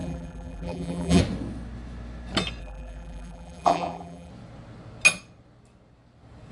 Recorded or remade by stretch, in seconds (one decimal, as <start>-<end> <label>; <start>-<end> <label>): 0.0-1.2 remade; 1.2-2.6 recorded; 2.6-4.3 remade; 4.3-6.5 recorded